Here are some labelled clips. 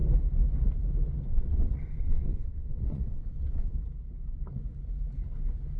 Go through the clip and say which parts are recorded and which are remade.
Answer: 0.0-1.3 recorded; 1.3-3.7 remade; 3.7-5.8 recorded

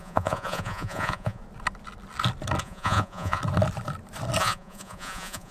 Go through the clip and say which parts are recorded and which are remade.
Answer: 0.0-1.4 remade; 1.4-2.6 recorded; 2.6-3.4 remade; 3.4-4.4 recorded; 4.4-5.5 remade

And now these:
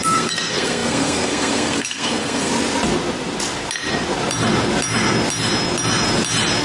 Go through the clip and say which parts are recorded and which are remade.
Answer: 0.0-2.5 remade; 2.5-6.6 recorded

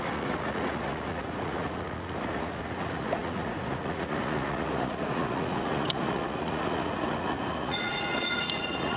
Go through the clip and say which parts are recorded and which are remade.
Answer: 0.0-9.0 remade

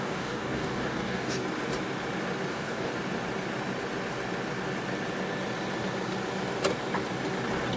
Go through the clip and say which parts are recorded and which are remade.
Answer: 0.0-1.4 remade; 1.4-2.5 recorded; 2.5-2.9 remade; 2.9-7.8 recorded

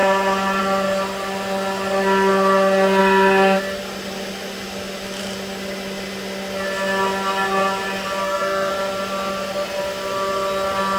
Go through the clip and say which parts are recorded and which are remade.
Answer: 0.0-3.0 recorded; 3.0-3.6 remade; 3.6-8.2 recorded; 8.2-8.7 remade; 8.7-11.0 recorded

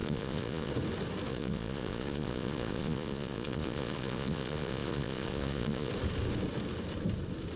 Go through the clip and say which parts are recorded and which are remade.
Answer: 0.0-0.7 remade; 0.7-1.3 recorded; 1.3-5.9 remade; 5.9-7.6 recorded

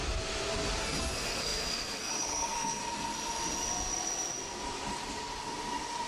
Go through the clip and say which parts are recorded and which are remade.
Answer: 0.0-0.8 recorded; 0.8-2.8 remade; 2.8-6.1 recorded